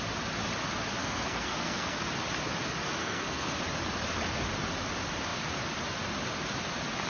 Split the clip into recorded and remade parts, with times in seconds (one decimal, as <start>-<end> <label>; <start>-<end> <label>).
0.0-1.0 recorded; 1.0-2.0 remade; 2.0-3.0 recorded; 3.0-3.6 remade; 3.6-7.1 recorded